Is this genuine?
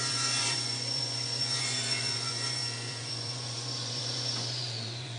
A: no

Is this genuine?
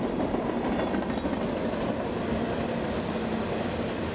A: yes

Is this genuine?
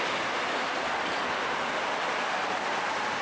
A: yes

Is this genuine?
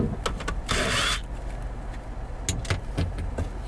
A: yes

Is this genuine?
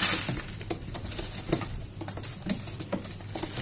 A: yes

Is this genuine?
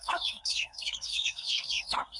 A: no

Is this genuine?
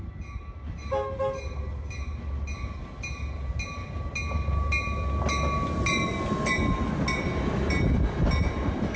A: yes